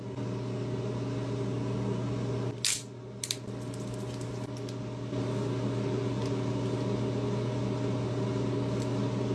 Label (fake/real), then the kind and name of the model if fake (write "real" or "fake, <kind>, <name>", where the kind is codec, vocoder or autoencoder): real